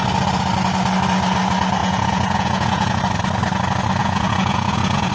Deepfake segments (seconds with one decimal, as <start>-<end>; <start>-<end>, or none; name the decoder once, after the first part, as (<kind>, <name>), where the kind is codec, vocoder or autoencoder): 1.8-3.0 (vocoder, Vocos); 4.0-5.1